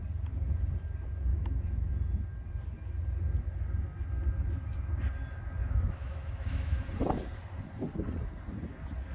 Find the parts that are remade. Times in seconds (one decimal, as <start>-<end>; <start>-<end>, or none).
1.3-1.9; 5.6-6.8